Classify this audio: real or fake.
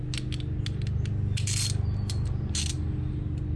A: real